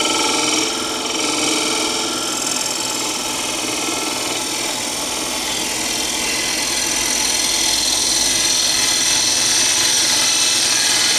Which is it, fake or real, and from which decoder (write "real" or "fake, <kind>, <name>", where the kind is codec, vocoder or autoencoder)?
real